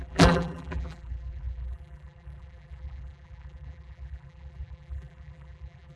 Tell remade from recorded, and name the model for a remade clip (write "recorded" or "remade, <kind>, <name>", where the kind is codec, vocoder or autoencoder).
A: remade, vocoder, BigVGAN v2